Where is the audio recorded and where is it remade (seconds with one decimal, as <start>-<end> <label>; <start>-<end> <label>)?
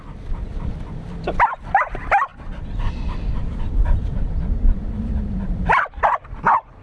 0.0-6.8 recorded